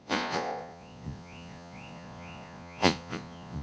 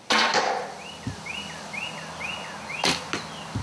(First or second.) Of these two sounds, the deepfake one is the first